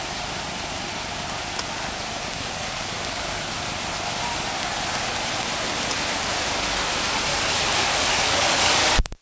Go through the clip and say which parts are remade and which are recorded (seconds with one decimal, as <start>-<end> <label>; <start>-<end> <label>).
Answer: 0.0-2.3 recorded; 2.3-3.4 remade; 3.4-7.3 recorded; 7.3-9.2 remade